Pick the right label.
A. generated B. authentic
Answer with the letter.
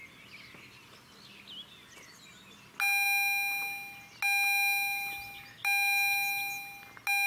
B